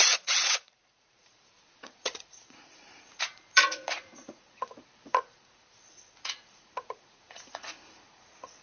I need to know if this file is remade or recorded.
remade